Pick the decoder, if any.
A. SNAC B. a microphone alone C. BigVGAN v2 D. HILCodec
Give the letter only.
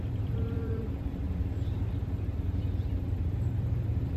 C